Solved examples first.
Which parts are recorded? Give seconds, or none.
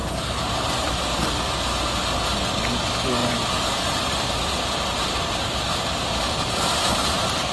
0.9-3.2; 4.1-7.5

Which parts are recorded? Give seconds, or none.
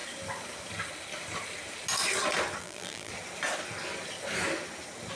0.0-2.6; 3.1-5.2